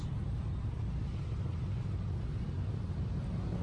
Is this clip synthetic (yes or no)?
no